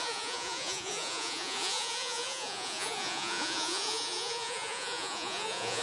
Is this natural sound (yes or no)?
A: no